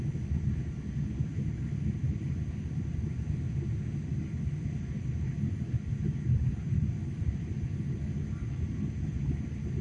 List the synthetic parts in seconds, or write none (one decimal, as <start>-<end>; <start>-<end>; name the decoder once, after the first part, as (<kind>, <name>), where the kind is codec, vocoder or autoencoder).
none